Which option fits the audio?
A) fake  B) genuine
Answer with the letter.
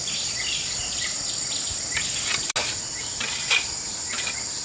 B